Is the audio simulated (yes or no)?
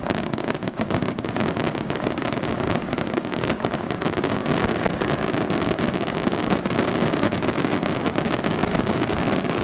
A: yes